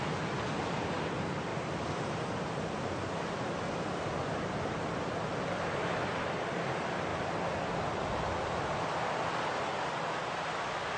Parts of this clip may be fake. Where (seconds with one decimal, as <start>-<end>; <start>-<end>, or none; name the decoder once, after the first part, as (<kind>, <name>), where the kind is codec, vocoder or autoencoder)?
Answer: none